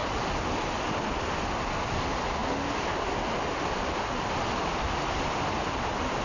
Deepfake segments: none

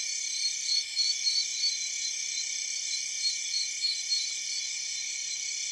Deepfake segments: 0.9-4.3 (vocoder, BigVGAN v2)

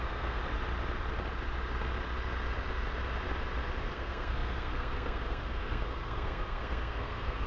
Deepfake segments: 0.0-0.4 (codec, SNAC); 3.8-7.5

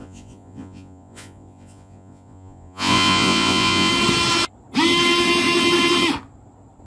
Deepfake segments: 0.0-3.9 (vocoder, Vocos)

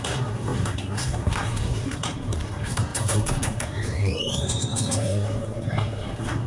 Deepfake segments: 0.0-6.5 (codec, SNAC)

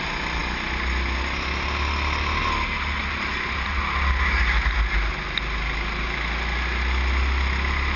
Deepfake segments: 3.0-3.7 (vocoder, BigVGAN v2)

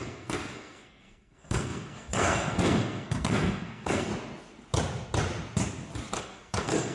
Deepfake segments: 0.0-4.1 (codec, SNAC); 6.2-6.9

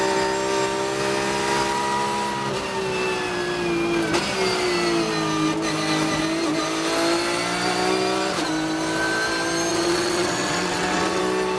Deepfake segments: 9.7-11.2 (vocoder, WaveNeXt)